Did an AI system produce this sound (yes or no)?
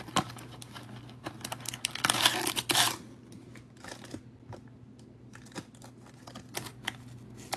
no